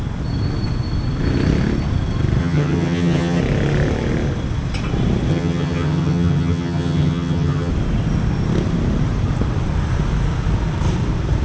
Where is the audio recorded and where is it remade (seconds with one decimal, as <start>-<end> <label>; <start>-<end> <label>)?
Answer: 0.0-2.4 recorded; 2.4-3.4 remade; 3.4-5.3 recorded; 5.3-7.7 remade; 7.7-11.4 recorded